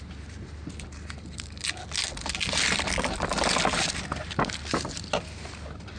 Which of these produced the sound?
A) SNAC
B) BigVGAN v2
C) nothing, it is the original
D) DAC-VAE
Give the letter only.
C